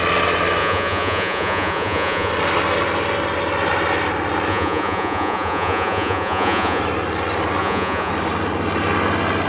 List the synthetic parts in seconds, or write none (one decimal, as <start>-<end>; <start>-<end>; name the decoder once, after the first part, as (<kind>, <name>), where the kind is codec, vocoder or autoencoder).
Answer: 0.6-2.3 (vocoder, Vocos); 4.5-6.8; 7.6-8.1